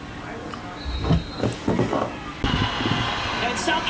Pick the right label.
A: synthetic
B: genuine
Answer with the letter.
B